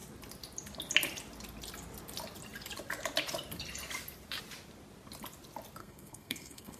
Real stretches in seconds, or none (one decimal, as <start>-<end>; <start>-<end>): 0.0-5.8